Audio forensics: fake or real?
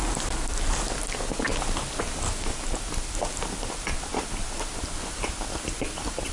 real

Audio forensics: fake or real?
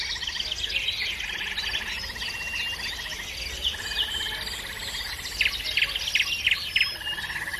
real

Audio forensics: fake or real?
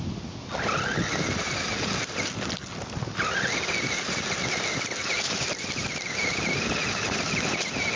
real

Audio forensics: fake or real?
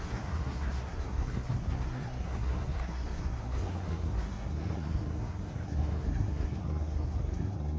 fake